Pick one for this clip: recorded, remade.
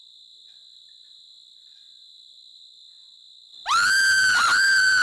remade